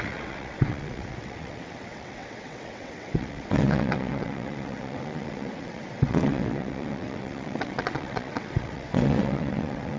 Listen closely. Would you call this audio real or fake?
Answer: fake